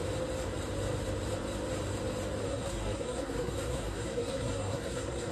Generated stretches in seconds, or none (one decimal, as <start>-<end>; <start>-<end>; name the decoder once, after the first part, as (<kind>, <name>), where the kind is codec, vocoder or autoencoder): 2.4-5.3 (codec, SNAC)